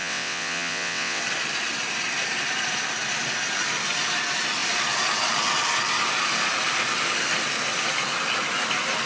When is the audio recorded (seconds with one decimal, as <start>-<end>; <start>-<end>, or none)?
1.2-9.1